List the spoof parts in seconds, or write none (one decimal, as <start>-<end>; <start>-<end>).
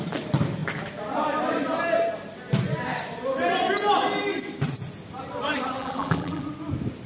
5.8-6.4